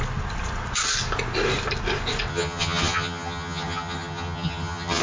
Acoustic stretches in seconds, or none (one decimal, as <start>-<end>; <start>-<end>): 0.0-2.3